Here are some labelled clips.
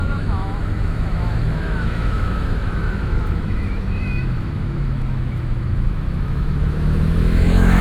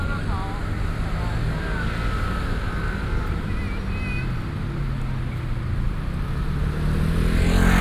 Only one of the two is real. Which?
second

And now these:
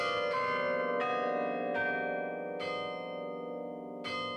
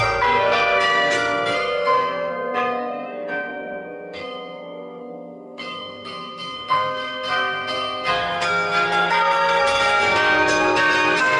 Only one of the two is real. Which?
first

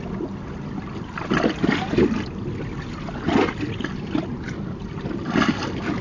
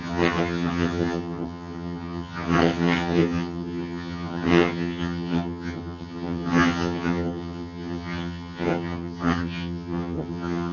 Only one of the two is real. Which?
first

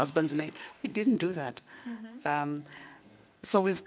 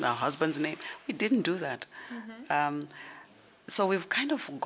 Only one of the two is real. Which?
second